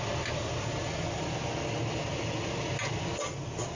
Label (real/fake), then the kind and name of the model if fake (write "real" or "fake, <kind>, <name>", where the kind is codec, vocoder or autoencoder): real